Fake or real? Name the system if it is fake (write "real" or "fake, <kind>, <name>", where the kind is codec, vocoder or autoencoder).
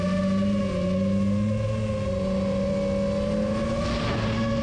real